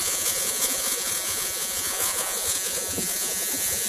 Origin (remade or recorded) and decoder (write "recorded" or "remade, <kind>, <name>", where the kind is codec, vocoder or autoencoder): remade, vocoder, Vocos